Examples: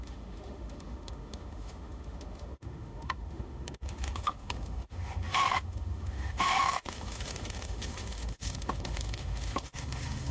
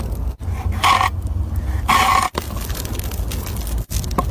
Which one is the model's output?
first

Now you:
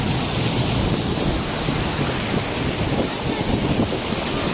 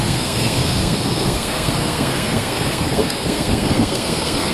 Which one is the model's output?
second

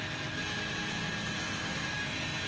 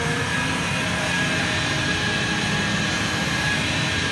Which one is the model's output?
second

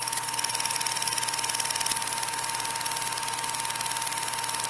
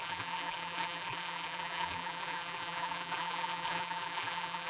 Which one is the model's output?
second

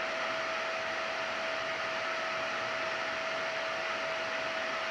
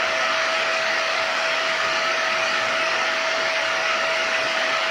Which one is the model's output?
second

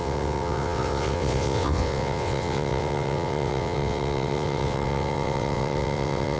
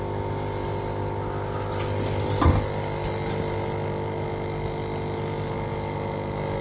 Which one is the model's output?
first